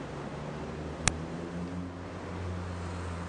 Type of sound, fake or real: real